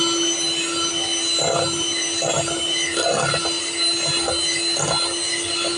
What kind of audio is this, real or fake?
real